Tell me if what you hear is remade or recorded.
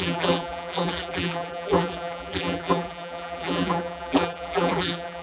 remade